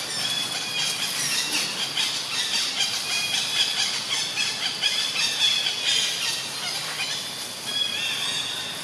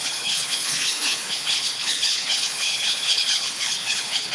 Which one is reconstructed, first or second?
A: second